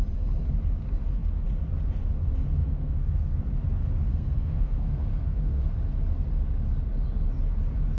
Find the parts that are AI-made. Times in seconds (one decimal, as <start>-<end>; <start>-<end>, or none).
2.6-3.4; 4.1-5.6